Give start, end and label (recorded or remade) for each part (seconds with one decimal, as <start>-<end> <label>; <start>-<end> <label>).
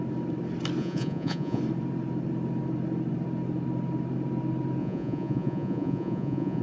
0.0-0.8 recorded; 0.8-1.6 remade; 1.6-4.8 recorded; 4.8-6.6 remade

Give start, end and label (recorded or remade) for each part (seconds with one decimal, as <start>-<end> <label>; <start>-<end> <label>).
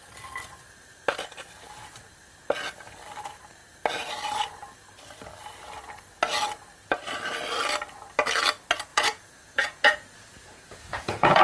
0.0-8.9 recorded; 8.9-11.4 remade